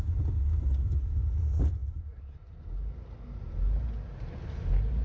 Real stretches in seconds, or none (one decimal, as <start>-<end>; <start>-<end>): 0.0-5.0